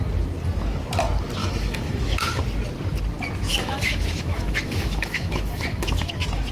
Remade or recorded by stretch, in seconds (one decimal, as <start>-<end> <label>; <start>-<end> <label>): 0.0-1.4 recorded; 1.4-2.4 remade; 2.4-3.5 recorded; 3.5-6.1 remade; 6.1-6.5 recorded